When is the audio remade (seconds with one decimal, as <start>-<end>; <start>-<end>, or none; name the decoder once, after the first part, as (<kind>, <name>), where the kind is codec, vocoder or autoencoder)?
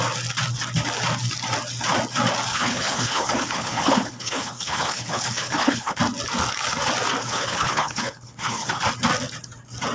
2.5-6.0 (codec, HILCodec); 7.2-8.8